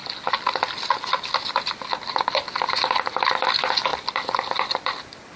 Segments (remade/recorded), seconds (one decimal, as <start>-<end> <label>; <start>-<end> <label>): 0.0-5.4 remade